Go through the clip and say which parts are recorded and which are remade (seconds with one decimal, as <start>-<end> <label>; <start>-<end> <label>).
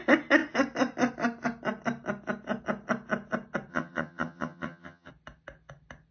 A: 0.0-3.7 recorded; 3.7-5.1 remade; 5.1-6.1 recorded